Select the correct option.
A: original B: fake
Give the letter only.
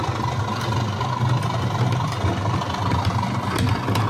A